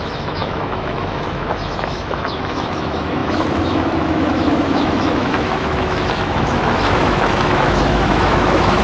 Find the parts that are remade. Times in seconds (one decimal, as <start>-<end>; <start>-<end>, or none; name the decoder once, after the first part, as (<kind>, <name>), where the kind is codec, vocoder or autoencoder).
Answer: 0.0-8.8 (autoencoder, DAC-VAE)